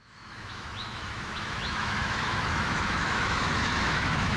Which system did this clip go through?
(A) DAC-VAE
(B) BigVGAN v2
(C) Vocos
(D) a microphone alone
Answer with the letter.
A